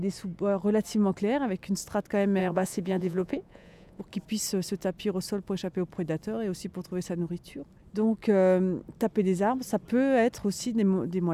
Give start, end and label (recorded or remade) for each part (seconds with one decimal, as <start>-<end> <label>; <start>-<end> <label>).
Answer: 0.0-2.4 recorded; 2.4-4.0 remade; 4.0-11.3 recorded